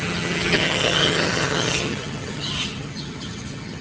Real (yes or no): no